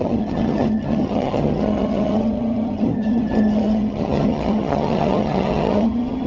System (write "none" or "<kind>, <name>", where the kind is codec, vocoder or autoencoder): vocoder, HiFi-GAN